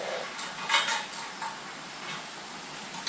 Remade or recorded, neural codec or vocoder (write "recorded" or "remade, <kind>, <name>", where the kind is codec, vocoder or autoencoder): recorded